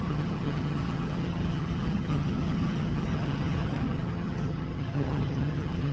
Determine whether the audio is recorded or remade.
remade